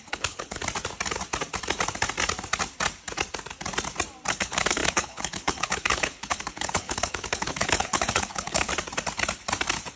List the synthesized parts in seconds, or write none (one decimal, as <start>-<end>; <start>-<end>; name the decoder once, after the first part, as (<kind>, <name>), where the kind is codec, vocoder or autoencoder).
0.0-0.6 (codec, HILCodec); 4.3-8.7